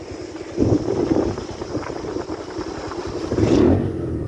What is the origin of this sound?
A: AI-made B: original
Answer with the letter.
B